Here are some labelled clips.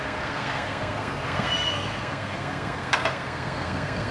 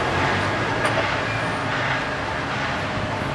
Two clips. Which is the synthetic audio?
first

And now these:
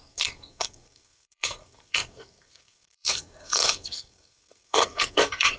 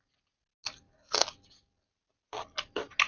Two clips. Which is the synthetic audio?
first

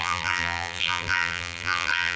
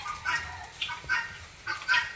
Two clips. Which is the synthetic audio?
first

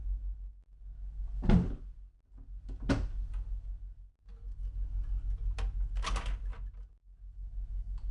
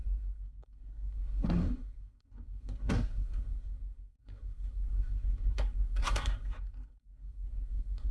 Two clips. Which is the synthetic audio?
second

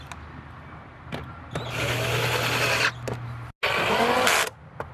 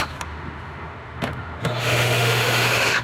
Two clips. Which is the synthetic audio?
second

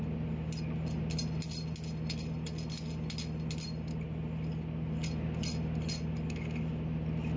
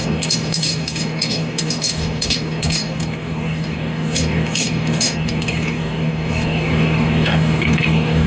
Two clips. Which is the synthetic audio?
second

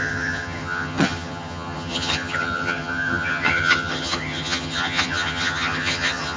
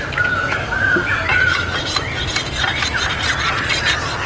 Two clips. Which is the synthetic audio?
first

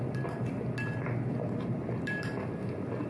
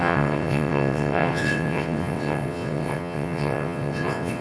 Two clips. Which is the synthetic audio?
second